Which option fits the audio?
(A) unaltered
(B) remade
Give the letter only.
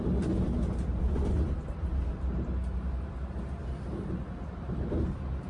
B